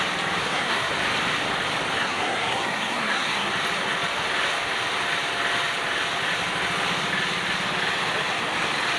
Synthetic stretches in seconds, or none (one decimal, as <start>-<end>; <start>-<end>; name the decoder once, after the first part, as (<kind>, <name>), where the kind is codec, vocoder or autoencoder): 0.4-0.9 (codec, SNAC); 2.0-3.5